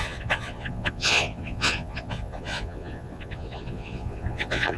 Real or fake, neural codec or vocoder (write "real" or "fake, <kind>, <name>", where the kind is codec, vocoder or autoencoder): fake, vocoder, Vocos